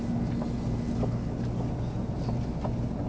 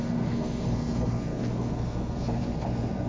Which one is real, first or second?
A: first